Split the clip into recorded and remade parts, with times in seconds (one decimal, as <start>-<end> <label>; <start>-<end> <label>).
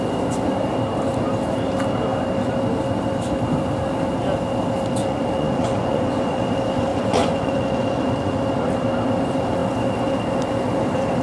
0.0-5.0 recorded; 5.0-6.4 remade; 6.4-6.9 recorded; 6.9-8.4 remade; 8.4-11.2 recorded